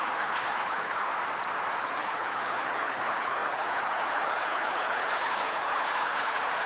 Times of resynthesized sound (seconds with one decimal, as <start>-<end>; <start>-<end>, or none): 0.0-1.1; 1.8-6.7